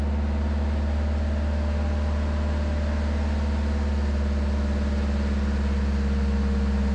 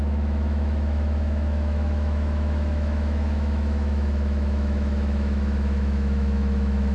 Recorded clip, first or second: first